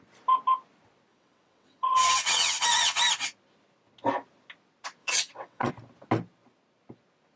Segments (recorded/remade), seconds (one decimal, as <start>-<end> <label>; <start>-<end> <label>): 0.0-1.1 recorded; 1.1-3.0 remade; 3.0-5.0 recorded; 5.0-5.7 remade; 5.7-7.4 recorded